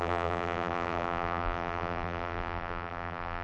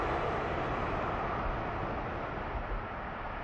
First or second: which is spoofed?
first